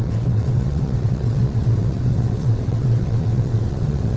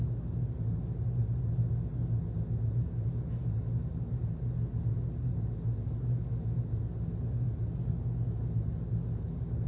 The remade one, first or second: first